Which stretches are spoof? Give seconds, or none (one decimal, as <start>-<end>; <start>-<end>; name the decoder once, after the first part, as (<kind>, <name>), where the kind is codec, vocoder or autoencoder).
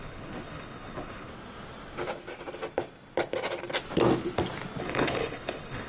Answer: 0.0-1.3 (codec, HILCodec); 4.8-5.9